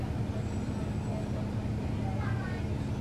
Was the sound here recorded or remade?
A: recorded